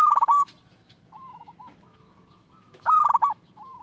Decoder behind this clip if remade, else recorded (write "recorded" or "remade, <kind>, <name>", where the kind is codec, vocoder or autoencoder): remade, autoencoder, DAC-VAE